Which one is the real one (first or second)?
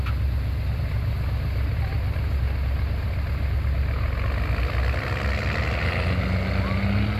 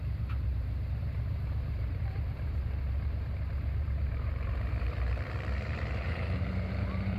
first